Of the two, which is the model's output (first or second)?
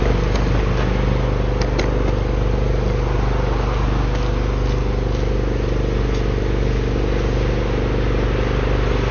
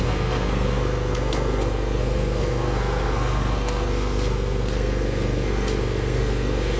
second